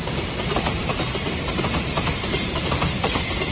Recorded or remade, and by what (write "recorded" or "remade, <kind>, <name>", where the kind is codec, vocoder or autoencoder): remade, vocoder, BigVGAN v2